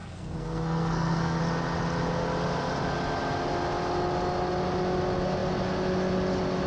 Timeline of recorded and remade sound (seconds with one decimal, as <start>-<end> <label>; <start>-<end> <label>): 0.0-1.4 remade; 1.4-6.7 recorded